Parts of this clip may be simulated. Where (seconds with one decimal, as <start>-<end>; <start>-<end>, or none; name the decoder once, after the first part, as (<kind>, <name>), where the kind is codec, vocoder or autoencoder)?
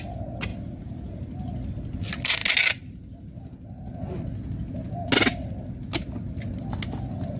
none